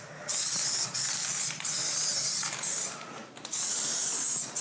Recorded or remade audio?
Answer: recorded